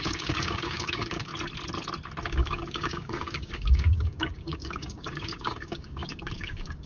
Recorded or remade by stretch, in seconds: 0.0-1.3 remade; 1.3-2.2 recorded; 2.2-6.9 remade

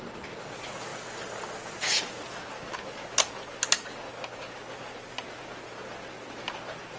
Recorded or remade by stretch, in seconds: 0.0-7.0 recorded

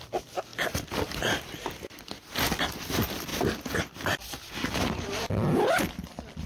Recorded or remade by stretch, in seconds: 0.0-3.3 remade; 3.3-3.8 recorded; 3.8-6.5 remade

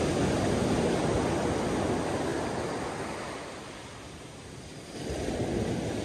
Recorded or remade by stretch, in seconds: 0.0-6.0 recorded

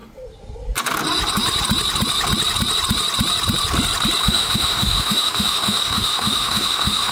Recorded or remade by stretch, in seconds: 0.0-4.2 recorded; 4.2-7.1 remade

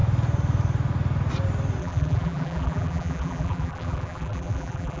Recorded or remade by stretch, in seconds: 0.0-1.8 recorded; 1.8-5.0 remade